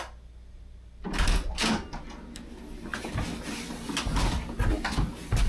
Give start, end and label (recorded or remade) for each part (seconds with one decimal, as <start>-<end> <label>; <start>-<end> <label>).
0.0-5.5 recorded